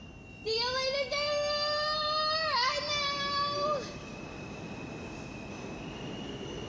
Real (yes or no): yes